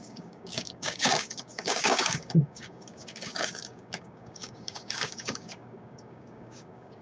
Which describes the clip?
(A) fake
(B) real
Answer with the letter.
A